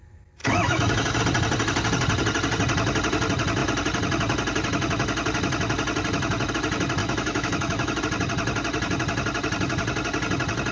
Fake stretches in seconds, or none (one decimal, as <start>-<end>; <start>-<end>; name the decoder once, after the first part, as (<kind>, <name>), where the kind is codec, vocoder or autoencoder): 0.4-1.2 (autoencoder, DAC-VAE); 7.0-8.0